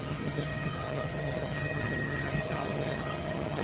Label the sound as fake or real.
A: fake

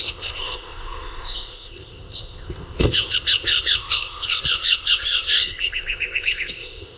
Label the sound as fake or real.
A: fake